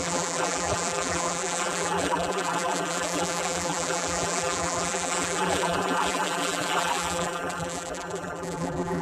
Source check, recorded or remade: remade